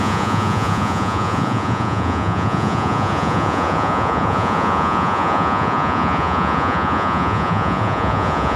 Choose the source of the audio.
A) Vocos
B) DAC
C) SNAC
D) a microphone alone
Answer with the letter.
A